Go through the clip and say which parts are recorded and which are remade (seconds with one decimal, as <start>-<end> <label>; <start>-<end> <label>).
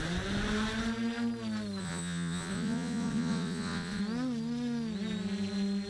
0.0-1.8 recorded; 1.8-4.0 remade; 4.0-5.9 recorded